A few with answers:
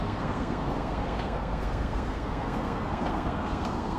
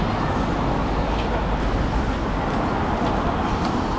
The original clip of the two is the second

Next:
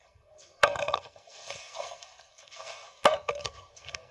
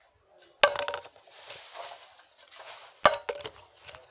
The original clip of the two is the second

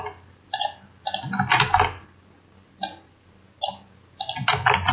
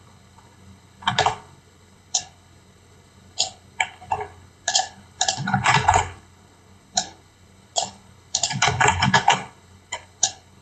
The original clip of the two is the first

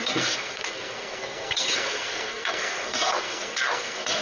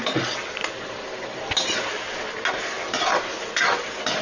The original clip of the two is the second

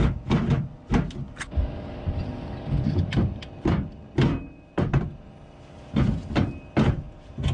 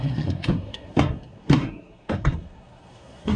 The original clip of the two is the first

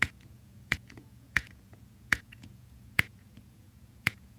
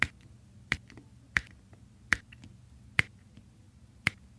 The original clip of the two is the second